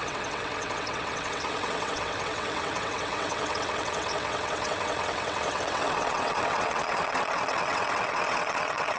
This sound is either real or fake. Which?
fake